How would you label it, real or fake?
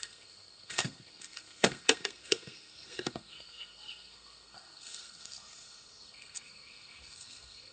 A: fake